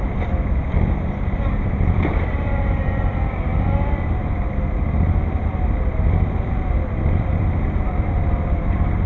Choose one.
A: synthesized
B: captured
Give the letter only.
A